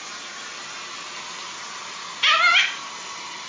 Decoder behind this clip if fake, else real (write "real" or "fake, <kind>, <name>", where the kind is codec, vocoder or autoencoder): real